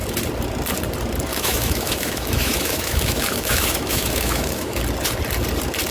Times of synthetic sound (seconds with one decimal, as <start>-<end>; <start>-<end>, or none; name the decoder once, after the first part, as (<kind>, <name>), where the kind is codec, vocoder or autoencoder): 1.3-4.8 (autoencoder, DAC-VAE)

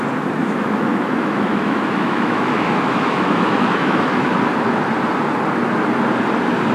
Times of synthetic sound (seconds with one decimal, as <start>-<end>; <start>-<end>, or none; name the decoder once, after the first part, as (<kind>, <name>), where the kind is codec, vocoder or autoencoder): 0.4-4.4 (autoencoder, DAC-VAE)

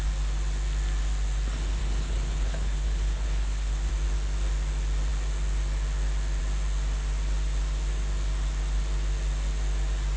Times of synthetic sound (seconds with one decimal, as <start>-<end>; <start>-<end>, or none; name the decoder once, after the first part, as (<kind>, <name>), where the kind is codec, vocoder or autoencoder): 1.8-3.9 (codec, HILCodec)

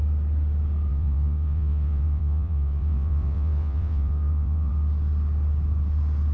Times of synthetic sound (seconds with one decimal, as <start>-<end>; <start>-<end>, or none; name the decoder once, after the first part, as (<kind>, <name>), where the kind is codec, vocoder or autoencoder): 0.9-4.7 (vocoder, WaveNeXt)